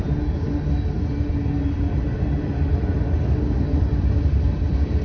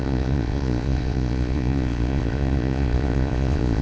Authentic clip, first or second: first